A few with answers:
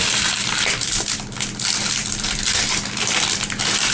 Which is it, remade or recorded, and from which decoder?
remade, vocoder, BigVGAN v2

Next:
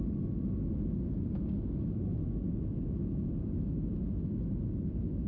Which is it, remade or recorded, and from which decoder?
recorded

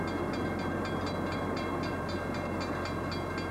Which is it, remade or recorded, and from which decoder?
recorded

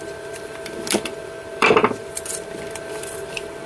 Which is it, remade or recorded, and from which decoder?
remade, vocoder, BigVGAN v2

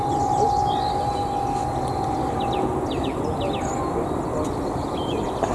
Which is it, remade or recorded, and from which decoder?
recorded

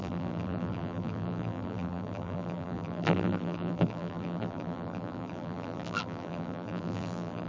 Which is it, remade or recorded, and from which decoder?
remade, vocoder, BigVGAN v2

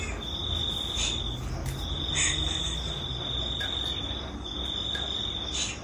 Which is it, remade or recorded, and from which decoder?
recorded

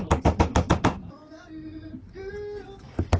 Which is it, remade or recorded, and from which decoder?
recorded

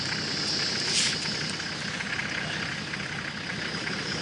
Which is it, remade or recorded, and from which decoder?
recorded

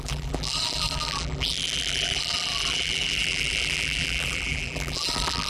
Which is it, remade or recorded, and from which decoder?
remade, vocoder, BigVGAN v2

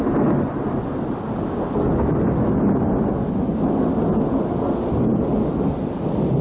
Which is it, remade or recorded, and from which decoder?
recorded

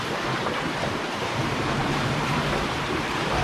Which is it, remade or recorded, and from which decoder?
remade, vocoder, BigVGAN v2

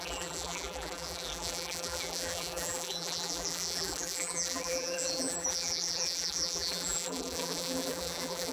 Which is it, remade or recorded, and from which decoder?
remade, vocoder, BigVGAN v2